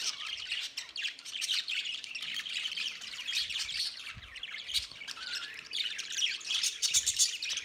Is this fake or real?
fake